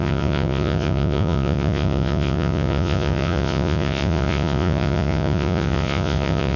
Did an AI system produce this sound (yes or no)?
yes